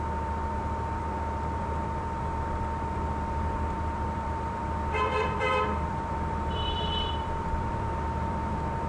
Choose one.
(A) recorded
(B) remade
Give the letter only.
B